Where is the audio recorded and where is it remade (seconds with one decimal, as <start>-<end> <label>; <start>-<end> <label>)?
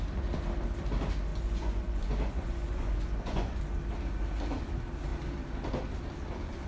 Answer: 0.0-1.3 recorded; 1.3-3.6 remade; 3.6-6.7 recorded